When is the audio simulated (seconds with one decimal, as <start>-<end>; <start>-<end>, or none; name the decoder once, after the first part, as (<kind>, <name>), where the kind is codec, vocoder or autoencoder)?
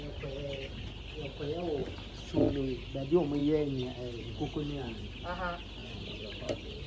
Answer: none